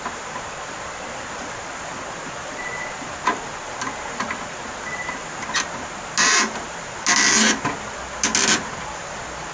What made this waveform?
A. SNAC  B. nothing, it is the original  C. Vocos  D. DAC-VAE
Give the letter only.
B